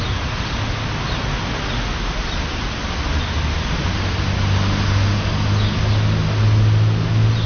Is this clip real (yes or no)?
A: yes